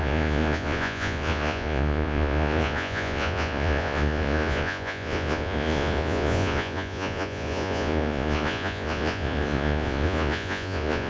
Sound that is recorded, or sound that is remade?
remade